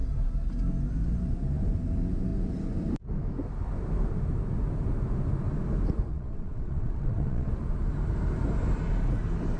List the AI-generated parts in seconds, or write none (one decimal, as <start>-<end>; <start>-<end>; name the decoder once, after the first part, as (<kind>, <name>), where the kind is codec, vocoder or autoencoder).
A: 6.1-7.5 (vocoder, WaveNeXt)